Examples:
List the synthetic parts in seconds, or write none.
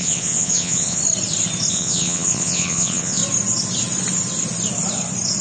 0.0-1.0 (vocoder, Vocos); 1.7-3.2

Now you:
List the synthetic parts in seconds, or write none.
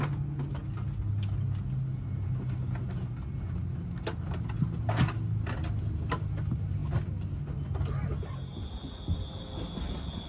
none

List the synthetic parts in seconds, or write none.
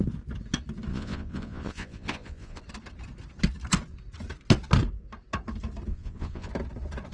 0.9-2.6 (vocoder, Vocos); 5.9-6.5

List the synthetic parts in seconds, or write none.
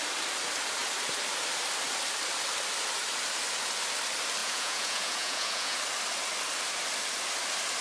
4.4-5.8 (vocoder, Vocos)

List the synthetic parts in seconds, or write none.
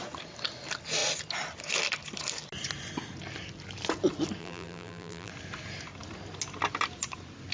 4.4-5.3 (vocoder, BigVGAN v2)